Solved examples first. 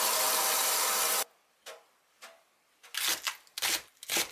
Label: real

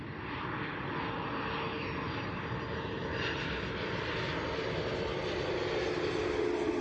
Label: real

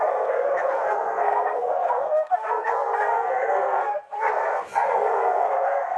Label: fake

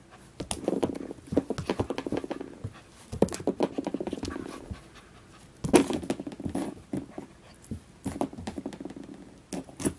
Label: real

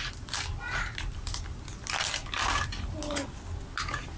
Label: real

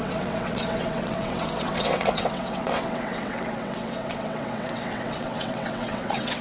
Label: fake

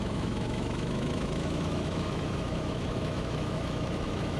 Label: fake